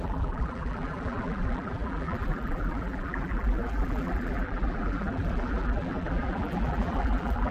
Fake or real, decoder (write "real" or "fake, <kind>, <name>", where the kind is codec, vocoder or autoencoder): fake, vocoder, BigVGAN v2